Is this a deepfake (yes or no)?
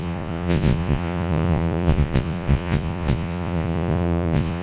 yes